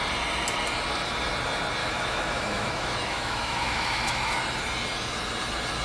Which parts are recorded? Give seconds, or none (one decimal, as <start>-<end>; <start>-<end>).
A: 0.0-1.8; 4.4-5.8